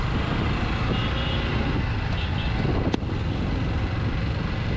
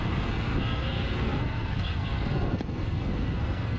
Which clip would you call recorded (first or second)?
first